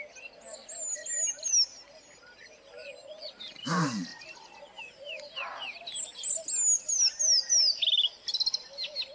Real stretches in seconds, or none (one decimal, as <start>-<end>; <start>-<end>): 0.0-9.1